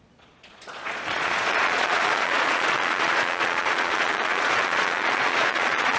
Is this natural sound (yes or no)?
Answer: no